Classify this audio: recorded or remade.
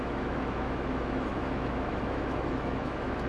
remade